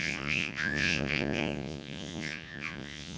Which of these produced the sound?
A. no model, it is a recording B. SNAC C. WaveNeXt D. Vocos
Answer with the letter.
D